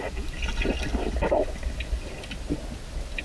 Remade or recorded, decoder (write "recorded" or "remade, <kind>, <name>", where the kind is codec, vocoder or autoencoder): recorded